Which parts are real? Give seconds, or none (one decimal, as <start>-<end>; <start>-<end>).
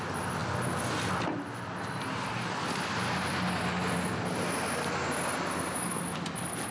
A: 0.0-6.7